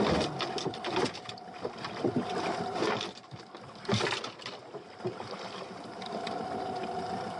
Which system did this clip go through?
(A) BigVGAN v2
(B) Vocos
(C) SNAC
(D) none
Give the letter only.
A